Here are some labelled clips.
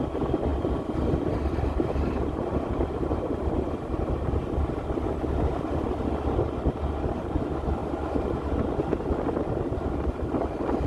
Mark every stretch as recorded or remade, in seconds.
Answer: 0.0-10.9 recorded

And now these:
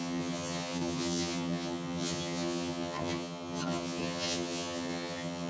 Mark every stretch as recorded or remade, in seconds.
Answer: 0.0-5.5 remade

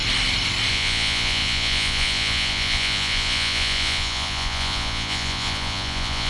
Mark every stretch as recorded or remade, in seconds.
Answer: 0.0-0.7 recorded; 0.7-6.3 remade

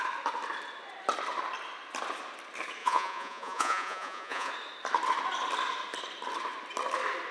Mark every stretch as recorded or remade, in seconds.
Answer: 0.0-2.8 recorded; 2.8-4.5 remade; 4.5-7.3 recorded

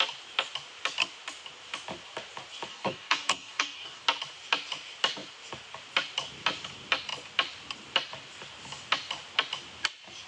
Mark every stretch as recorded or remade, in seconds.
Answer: 0.0-2.7 recorded; 2.7-4.0 remade; 4.0-10.3 recorded